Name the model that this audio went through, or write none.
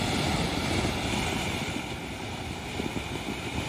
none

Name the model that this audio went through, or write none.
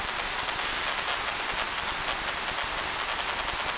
none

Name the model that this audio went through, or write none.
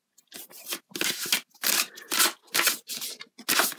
none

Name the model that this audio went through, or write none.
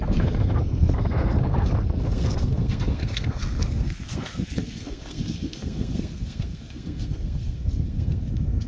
codec, SNAC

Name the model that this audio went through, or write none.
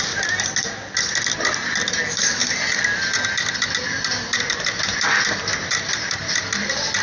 none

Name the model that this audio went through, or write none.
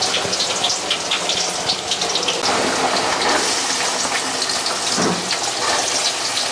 none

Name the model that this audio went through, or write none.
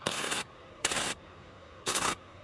codec, SNAC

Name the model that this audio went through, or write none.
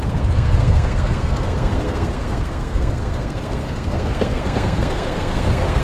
codec, SNAC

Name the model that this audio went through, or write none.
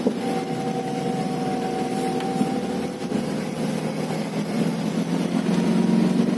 none